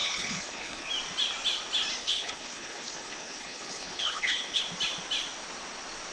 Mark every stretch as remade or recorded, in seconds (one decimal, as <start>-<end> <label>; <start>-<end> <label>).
0.0-0.9 remade; 0.9-2.0 recorded; 2.0-4.6 remade; 4.6-6.1 recorded